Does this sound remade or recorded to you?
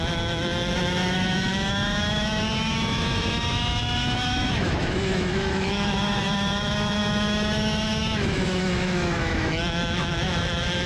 remade